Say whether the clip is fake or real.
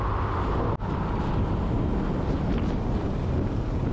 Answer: real